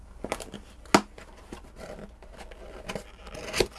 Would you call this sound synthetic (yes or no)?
no